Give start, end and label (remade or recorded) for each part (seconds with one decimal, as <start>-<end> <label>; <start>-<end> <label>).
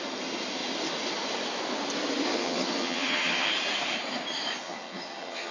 0.0-2.3 recorded; 2.3-3.5 remade; 3.5-4.6 recorded; 4.6-5.5 remade